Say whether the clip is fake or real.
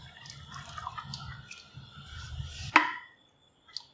real